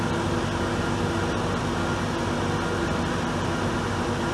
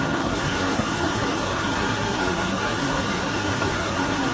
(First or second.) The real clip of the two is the first